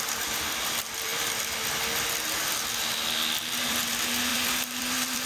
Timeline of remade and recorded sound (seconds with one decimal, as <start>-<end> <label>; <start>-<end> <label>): 0.0-1.1 remade; 1.1-3.7 recorded; 3.7-5.3 remade